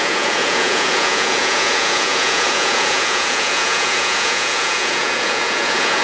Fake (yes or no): yes